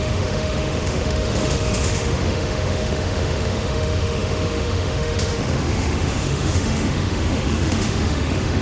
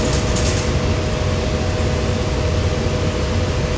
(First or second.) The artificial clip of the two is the first